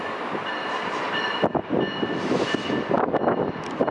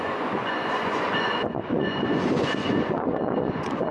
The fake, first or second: second